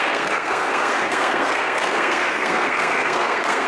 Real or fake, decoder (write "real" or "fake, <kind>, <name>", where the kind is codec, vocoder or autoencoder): fake, codec, SNAC